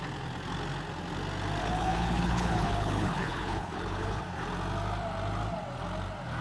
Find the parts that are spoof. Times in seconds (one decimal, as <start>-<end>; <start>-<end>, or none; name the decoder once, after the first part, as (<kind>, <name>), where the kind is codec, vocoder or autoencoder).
1.6-4.2 (codec, HILCodec)